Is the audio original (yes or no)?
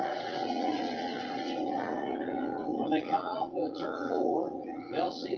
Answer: no